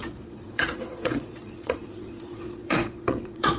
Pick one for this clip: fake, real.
fake